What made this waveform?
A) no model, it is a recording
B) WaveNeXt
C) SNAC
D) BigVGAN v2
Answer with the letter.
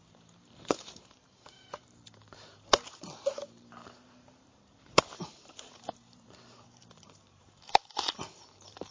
D